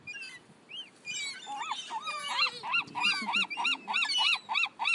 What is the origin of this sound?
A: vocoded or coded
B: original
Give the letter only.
B